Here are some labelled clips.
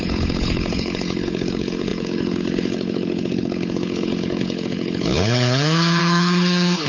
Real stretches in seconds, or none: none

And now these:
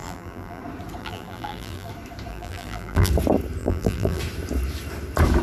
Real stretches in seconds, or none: 0.6-1.0; 1.9-2.3; 3.1-3.6; 4.2-5.4

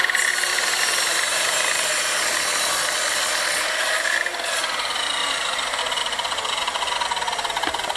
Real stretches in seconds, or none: 0.0-0.5; 4.1-5.2; 5.8-8.0

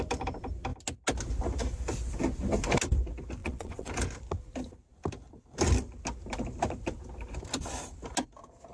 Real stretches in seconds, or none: 0.0-3.4; 3.9-8.7

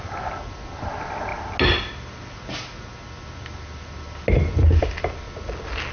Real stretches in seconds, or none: 0.0-5.9